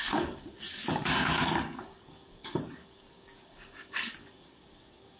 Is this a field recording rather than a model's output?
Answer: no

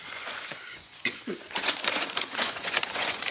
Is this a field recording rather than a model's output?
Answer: no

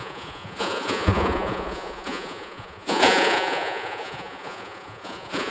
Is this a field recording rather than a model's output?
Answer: no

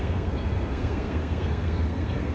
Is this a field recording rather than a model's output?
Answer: no